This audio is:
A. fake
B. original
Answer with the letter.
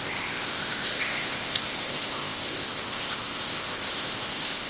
A